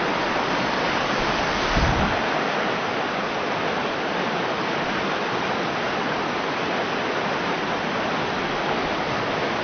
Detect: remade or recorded recorded